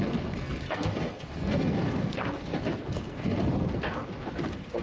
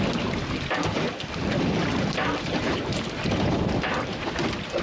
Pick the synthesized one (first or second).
first